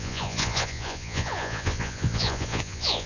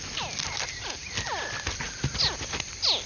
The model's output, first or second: first